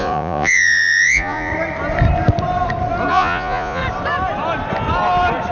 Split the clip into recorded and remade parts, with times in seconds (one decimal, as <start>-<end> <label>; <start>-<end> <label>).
0.0-1.5 remade; 1.5-3.1 recorded; 3.1-3.8 remade; 3.8-5.5 recorded